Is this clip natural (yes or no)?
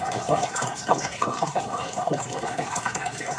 no